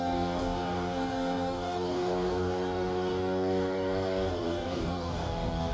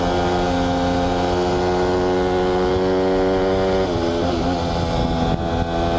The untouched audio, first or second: second